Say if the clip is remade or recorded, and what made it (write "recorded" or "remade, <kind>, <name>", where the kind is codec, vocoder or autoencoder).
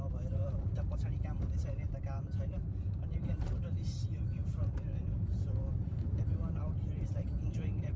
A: remade, vocoder, BigVGAN v2